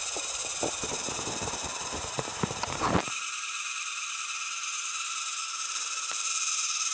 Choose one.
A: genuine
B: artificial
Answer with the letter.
B